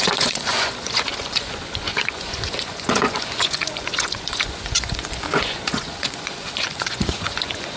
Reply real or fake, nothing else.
fake